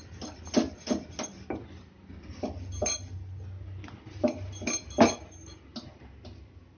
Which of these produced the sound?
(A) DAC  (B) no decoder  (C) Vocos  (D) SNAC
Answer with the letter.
B